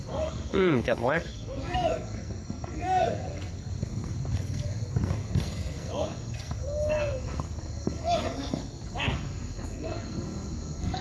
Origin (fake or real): fake